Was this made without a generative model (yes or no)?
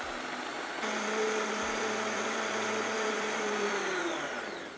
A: no